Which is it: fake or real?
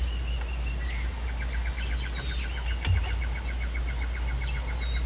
real